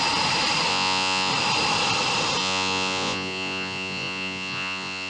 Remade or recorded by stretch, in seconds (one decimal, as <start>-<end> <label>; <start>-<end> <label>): 0.0-0.7 recorded; 0.7-1.3 remade; 1.3-2.4 recorded; 2.4-5.1 remade